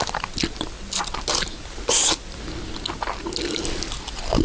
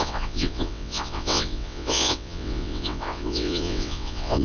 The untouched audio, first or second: first